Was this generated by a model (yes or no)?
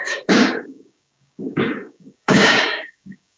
yes